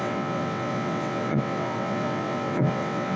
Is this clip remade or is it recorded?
remade